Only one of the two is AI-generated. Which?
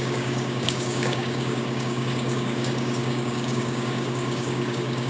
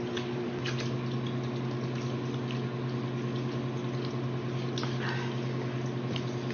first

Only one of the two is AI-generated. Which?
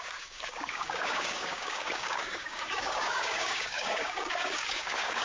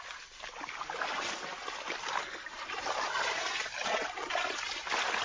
first